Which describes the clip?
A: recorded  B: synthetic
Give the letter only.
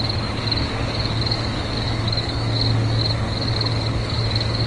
B